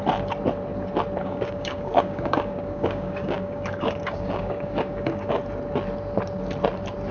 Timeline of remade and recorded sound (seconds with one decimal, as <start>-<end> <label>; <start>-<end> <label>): 0.0-1.2 recorded; 1.2-5.4 remade; 5.4-7.1 recorded